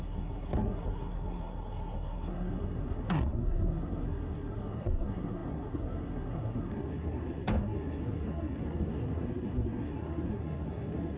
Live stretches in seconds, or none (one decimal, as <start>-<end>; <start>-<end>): none